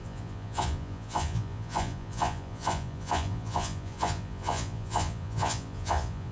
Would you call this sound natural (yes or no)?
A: no